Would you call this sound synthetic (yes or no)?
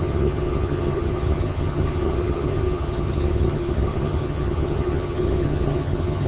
yes